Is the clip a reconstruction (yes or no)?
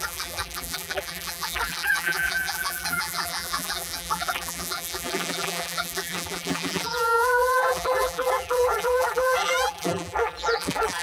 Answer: yes